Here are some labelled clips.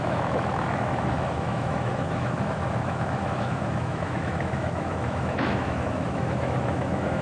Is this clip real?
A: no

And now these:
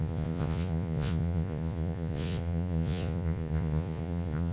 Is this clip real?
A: no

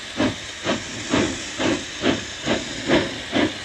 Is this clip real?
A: yes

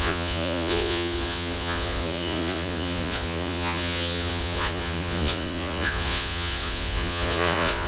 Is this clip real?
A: no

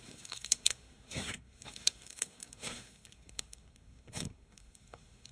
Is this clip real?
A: no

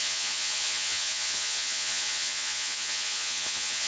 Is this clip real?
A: no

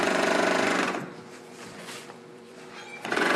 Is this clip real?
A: no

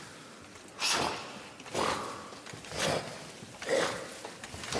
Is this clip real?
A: yes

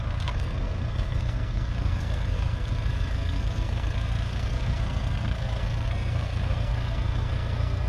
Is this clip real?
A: no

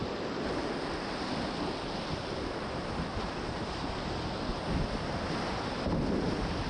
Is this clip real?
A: yes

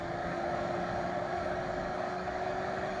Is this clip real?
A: no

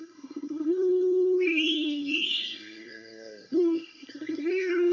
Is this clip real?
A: no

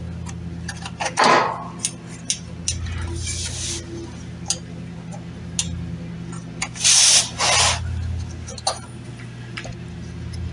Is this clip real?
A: yes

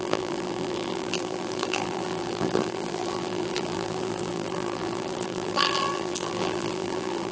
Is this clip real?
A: no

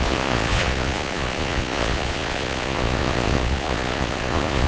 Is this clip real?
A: no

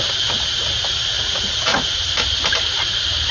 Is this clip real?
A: yes